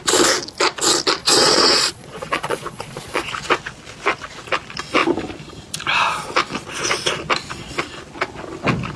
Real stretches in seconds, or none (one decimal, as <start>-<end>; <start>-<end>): 0.0-1.2; 3.3-9.0